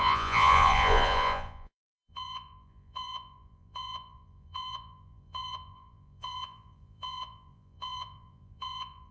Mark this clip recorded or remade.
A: remade